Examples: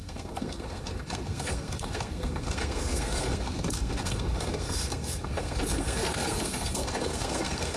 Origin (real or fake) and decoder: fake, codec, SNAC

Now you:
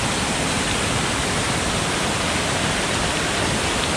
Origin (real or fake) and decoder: real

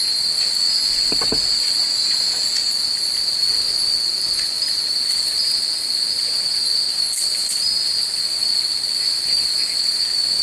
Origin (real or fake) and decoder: real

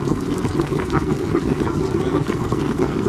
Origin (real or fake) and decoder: fake, codec, SNAC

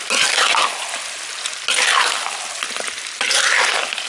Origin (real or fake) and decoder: real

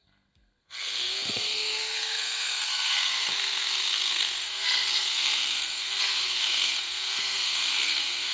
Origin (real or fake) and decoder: fake, codec, SNAC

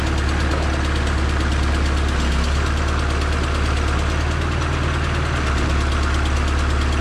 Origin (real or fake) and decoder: real